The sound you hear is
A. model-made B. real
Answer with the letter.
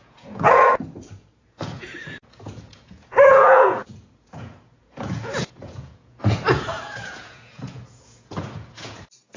A